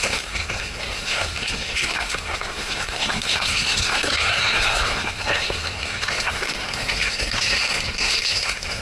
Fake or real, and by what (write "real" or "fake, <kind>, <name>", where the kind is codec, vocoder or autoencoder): fake, codec, SNAC